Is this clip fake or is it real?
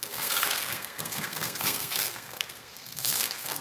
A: fake